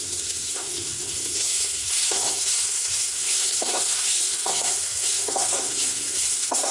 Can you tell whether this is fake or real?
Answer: fake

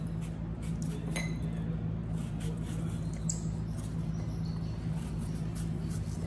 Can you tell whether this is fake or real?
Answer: real